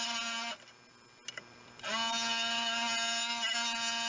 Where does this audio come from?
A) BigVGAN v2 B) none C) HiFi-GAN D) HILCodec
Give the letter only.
B